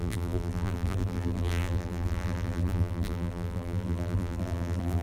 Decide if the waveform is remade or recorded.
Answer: remade